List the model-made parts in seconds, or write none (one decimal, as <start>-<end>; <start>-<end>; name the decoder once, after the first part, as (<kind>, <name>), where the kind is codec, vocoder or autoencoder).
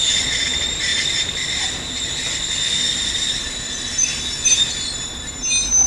none